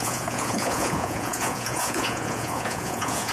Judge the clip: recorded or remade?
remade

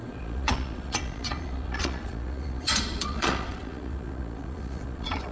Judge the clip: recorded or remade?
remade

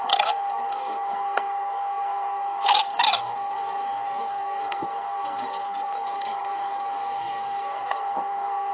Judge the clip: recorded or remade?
remade